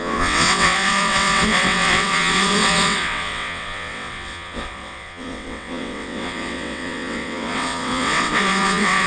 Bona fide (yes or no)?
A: no